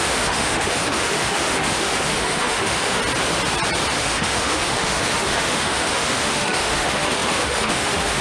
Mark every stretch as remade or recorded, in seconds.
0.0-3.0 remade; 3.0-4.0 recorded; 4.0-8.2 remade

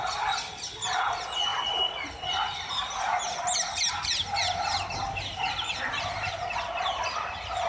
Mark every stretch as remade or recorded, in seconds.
0.0-7.7 recorded

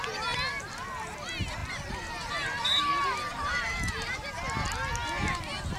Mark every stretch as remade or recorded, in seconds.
0.0-1.6 recorded; 1.6-2.3 remade; 2.3-5.8 recorded

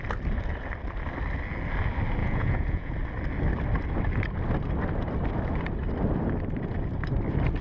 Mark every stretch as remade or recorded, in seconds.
0.0-2.2 recorded; 2.2-2.9 remade; 2.9-7.6 recorded

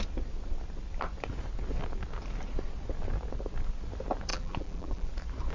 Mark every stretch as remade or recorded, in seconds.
0.0-4.3 recorded; 4.3-5.1 remade; 5.1-5.5 recorded

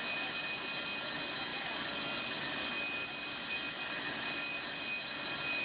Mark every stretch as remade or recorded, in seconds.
0.0-5.6 recorded